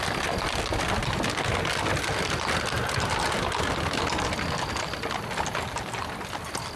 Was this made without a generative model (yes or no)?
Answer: yes